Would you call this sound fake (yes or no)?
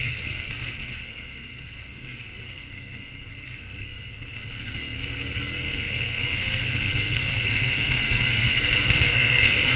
yes